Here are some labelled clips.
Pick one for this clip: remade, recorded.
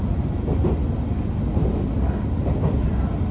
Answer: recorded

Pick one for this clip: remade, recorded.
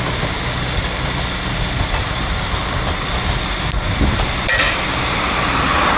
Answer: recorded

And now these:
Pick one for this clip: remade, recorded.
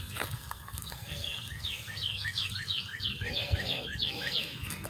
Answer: remade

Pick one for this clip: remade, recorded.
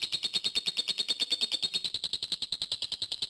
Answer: recorded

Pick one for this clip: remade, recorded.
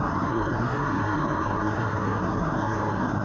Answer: remade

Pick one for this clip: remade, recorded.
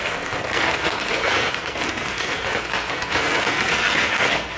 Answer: remade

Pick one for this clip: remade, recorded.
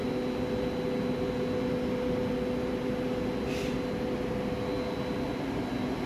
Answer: recorded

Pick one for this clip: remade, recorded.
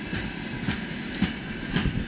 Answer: recorded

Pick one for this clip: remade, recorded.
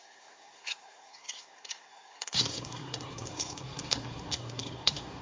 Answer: remade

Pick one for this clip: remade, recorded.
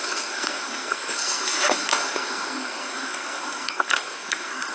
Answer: remade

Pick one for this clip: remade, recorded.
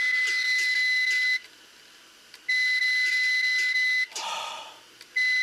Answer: recorded